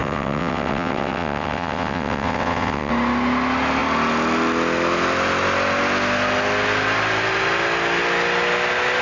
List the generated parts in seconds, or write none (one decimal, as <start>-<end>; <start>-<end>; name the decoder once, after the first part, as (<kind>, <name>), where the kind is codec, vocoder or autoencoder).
0.0-2.9 (vocoder, WaveNeXt)